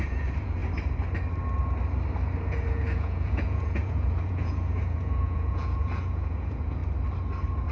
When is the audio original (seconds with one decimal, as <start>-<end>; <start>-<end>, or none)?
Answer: 0.6-2.5; 6.8-7.7